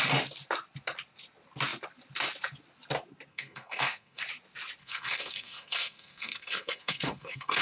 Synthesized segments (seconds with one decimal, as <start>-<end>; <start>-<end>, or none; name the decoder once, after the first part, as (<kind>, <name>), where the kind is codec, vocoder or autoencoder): 3.3-4.2 (codec, SNAC); 4.8-7.6